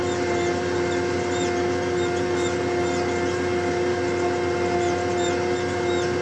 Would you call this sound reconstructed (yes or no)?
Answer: no